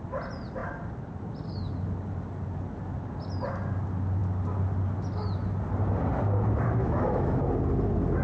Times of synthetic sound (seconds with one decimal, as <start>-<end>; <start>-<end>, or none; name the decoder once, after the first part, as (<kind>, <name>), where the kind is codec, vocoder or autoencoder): 6.8-7.4 (autoencoder, DAC-VAE)